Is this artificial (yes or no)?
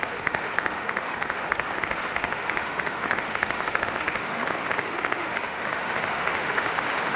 yes